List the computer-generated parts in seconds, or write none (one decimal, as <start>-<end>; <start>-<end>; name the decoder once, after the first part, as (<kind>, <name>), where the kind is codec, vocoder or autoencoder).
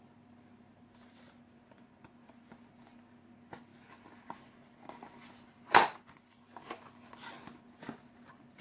none